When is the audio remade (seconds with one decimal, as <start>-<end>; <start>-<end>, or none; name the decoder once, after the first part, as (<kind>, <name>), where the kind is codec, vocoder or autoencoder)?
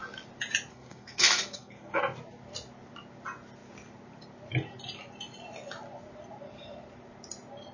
0.7-2.0 (codec, SNAC)